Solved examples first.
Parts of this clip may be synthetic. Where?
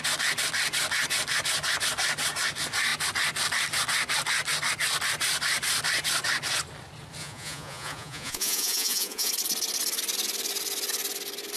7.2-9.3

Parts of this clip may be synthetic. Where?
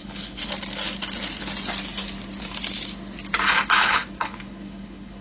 0.0-0.4; 3.5-5.2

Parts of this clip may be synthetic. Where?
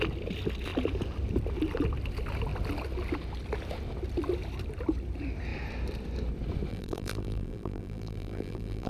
6.7-8.9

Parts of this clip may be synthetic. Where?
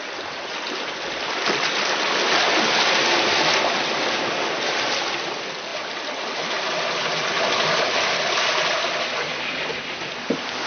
none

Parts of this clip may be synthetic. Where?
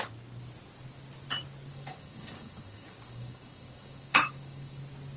1.7-4.8